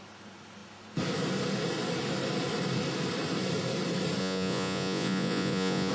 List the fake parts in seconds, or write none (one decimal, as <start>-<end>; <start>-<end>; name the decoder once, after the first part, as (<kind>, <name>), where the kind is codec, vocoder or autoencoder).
4.2-5.9 (vocoder, Vocos)